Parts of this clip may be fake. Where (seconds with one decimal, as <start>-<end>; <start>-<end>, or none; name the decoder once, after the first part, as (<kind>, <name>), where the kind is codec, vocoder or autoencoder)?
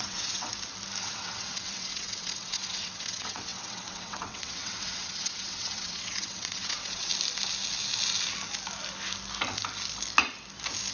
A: 0.0-0.5 (vocoder, WaveNeXt); 1.0-7.1